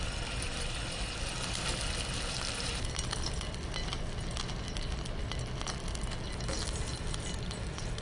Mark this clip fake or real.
real